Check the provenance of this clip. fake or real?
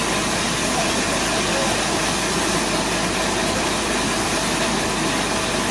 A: real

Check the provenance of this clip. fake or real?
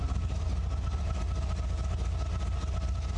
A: real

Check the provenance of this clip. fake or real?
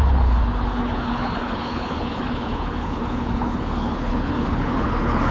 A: fake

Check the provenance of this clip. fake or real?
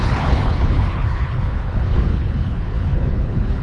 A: fake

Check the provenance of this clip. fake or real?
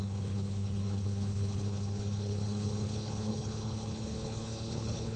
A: fake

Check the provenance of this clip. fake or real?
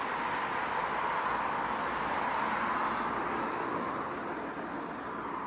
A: real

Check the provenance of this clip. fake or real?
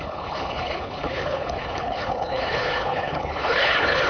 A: fake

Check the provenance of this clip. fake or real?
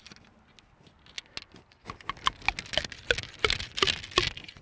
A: real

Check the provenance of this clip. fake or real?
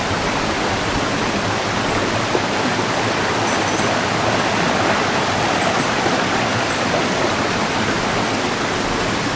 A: real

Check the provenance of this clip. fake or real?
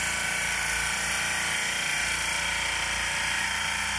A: real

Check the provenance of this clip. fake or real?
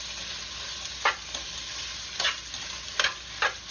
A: real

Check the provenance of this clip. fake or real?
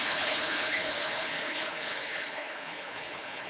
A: fake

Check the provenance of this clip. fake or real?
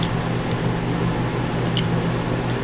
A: real